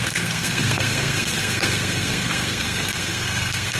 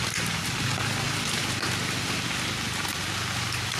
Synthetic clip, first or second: first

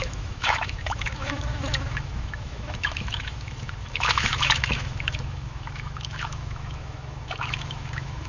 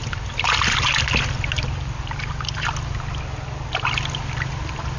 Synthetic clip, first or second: first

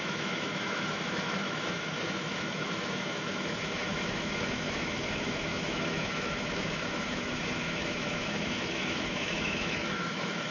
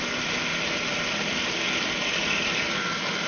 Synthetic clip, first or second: first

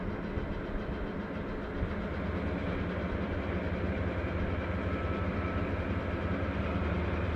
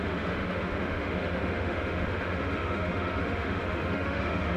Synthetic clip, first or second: second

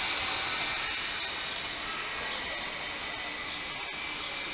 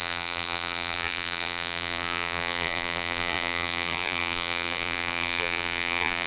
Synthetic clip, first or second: second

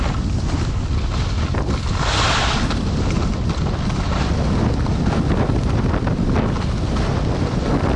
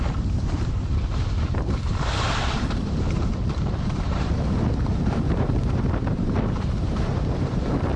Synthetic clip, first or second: second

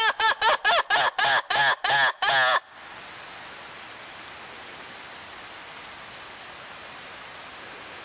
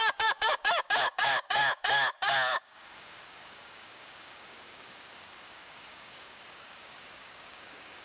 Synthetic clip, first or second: second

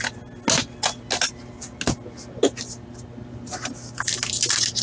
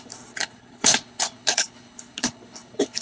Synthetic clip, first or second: second